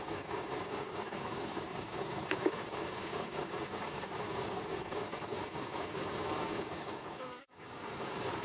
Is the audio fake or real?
fake